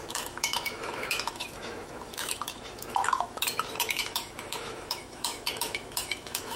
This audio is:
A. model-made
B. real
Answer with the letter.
A